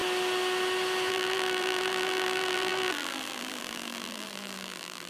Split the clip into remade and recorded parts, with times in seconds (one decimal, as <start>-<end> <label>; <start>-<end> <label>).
0.0-1.1 recorded; 1.1-5.1 remade